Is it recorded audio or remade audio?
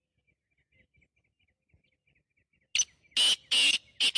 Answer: recorded